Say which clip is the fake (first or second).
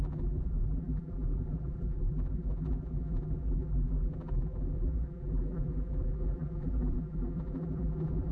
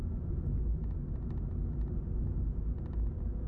first